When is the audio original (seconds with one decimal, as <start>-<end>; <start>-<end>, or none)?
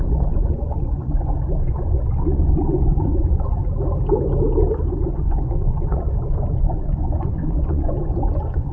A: 3.6-5.0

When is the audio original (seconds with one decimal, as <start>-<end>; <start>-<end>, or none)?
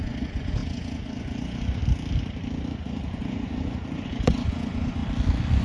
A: 1.8-3.1; 5.0-5.6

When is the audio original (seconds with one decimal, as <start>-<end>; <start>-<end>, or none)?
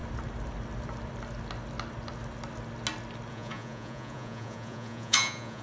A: 0.0-3.3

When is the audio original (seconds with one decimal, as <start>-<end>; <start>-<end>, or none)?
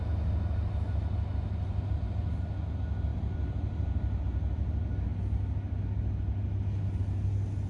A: 0.0-7.7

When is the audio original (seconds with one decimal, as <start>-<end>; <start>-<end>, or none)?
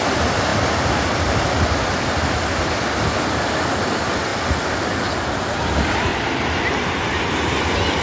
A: 0.0-8.0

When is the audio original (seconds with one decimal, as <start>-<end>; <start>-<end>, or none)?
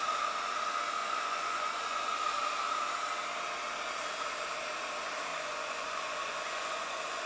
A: 0.0-1.0; 2.1-5.3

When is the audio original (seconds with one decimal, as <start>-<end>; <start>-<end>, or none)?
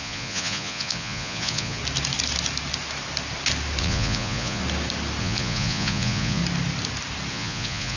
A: 1.8-3.8; 4.6-5.2; 6.4-7.3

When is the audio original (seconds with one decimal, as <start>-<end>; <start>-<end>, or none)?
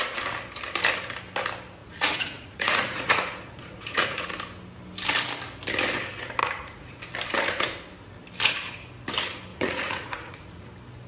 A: 0.0-1.8; 4.3-6.4; 7.0-9.5; 10.7-11.1